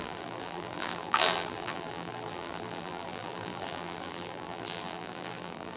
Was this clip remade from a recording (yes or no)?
yes